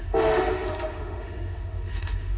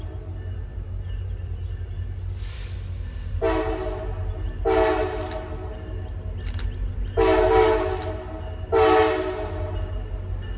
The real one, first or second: second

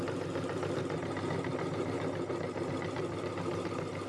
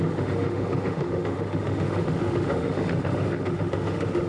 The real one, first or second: first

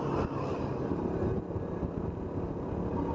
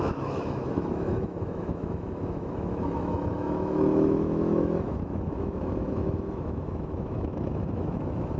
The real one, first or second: first